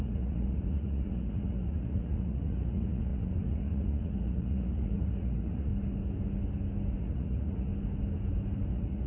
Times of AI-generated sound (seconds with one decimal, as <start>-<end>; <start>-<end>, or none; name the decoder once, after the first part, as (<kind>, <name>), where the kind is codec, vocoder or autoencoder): 0.0-5.7 (vocoder, Vocos); 7.0-7.7; 8.7-9.1